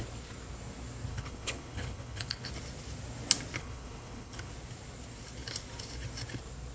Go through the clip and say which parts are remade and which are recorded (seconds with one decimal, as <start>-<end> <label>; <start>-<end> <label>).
0.0-1.1 recorded; 1.1-2.5 remade; 2.5-3.6 recorded; 3.6-4.5 remade; 4.5-6.7 recorded